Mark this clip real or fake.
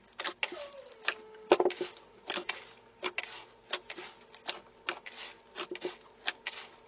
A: real